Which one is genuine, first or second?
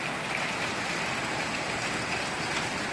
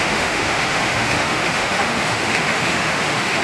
first